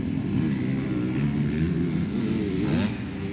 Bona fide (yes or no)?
yes